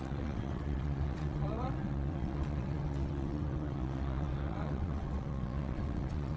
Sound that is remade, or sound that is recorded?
remade